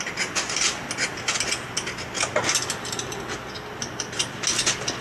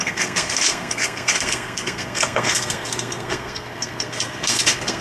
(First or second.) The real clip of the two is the first